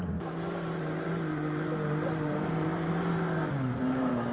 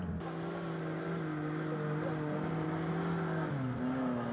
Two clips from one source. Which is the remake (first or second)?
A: first